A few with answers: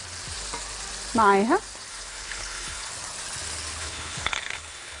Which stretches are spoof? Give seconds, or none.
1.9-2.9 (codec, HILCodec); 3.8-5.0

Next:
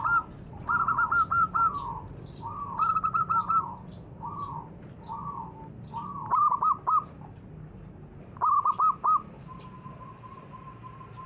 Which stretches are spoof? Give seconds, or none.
1.0-2.3 (vocoder, BigVGAN v2); 3.2-5.7; 6.5-7.1

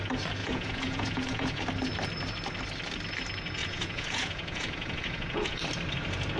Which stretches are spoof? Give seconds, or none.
0.4-1.6 (vocoder, Vocos); 3.6-5.6

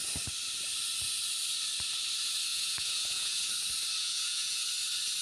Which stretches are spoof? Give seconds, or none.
2.5-3.5 (vocoder, Vocos); 4.0-4.6

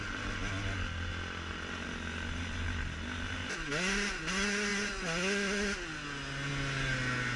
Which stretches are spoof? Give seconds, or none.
none

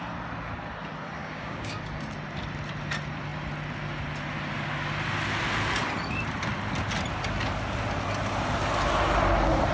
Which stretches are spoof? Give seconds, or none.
1.2-1.8 (codec, DAC)

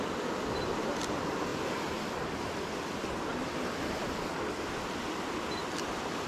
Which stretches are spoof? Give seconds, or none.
none